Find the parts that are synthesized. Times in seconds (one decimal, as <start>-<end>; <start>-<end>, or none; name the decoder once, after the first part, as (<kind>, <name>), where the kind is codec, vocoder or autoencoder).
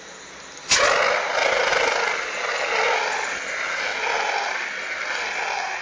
none